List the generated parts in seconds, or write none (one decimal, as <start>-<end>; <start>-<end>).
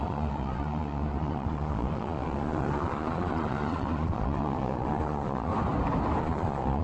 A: 0.0-5.5; 6.2-6.8